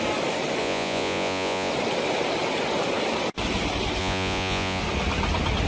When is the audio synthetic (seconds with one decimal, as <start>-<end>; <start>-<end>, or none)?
0.6-1.7; 4.0-4.8

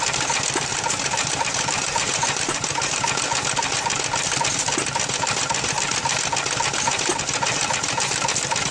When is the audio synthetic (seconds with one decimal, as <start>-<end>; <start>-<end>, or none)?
0.7-3.0

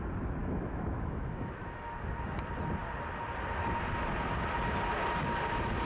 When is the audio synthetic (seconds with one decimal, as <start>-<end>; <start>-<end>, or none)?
0.4-1.9

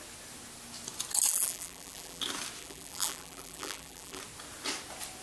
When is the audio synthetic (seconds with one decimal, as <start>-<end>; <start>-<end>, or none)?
1.3-2.2; 2.6-4.2

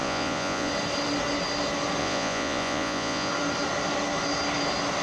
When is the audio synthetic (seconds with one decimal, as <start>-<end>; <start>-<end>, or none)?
0.0-0.7; 2.0-3.3

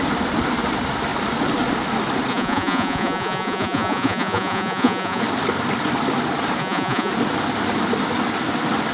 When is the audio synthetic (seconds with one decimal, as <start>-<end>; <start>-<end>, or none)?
2.3-5.2; 6.6-7.1